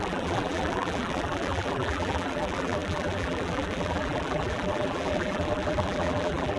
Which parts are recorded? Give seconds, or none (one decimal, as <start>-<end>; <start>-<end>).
none